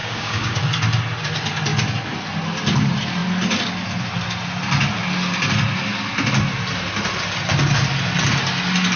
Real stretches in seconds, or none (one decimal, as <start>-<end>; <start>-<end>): 0.6-9.0